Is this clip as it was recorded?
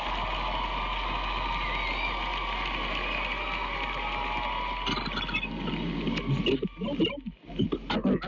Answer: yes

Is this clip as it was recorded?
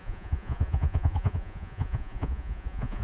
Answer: no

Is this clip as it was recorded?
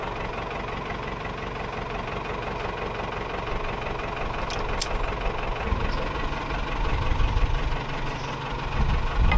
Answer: yes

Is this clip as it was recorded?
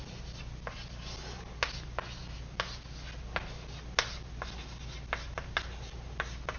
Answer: yes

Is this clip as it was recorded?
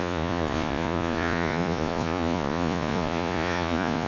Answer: no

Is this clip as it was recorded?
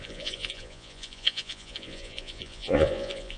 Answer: no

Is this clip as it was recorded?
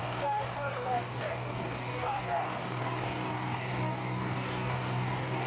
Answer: no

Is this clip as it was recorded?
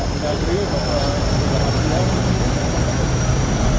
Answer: yes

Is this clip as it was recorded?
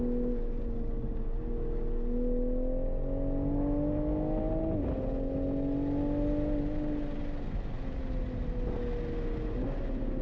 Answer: yes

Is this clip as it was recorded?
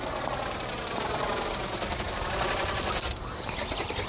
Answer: yes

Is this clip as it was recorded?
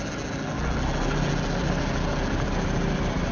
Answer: yes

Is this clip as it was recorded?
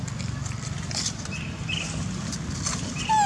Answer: yes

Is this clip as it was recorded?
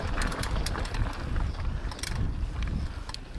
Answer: yes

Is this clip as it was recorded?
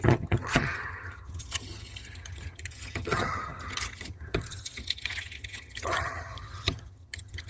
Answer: no